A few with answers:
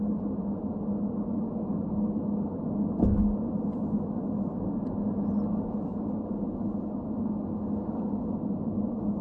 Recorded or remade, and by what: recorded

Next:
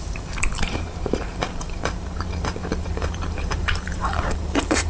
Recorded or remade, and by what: remade, vocoder, BigVGAN v2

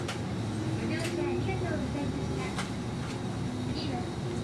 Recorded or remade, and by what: recorded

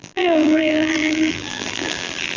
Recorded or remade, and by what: remade, vocoder, BigVGAN v2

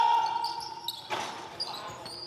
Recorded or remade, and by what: recorded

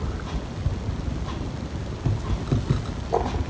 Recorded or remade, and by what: recorded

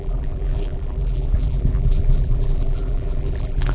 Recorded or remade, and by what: remade, vocoder, BigVGAN v2